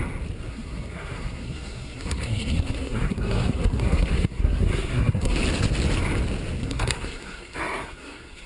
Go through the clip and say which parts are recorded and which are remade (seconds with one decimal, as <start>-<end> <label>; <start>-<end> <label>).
0.0-0.5 recorded; 0.5-5.4 remade; 5.4-6.6 recorded; 6.6-8.5 remade